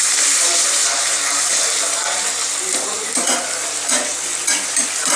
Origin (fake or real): real